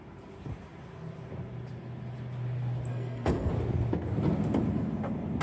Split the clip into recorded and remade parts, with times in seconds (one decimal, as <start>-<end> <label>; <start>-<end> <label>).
0.0-2.9 recorded; 2.9-3.5 remade; 3.5-5.4 recorded